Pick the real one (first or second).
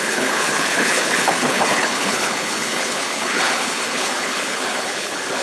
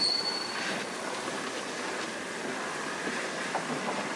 second